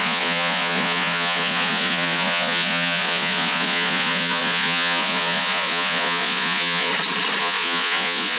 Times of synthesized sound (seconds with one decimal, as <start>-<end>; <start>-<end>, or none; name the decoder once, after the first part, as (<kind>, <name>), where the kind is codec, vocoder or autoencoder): 0.0-6.9 (vocoder, Vocos); 7.4-8.4